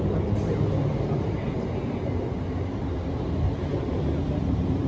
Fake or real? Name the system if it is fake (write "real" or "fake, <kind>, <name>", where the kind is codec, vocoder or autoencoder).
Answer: real